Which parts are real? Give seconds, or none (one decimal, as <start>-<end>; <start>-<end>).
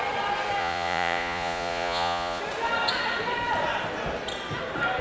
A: 0.0-0.6; 2.4-5.0